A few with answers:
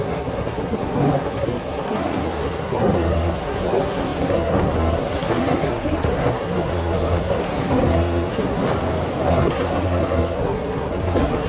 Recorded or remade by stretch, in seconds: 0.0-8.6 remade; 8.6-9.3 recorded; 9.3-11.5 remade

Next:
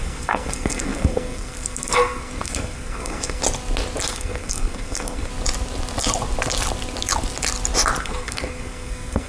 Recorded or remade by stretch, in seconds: 0.0-3.4 remade; 3.4-4.1 recorded; 4.1-5.3 remade; 5.3-8.0 recorded; 8.0-9.3 remade